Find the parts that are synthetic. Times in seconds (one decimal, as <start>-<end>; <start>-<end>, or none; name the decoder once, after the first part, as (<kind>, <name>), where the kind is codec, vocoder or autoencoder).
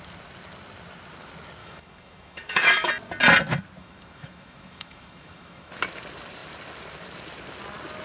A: 1.6-2.9 (autoencoder, DAC-VAE); 3.8-5.7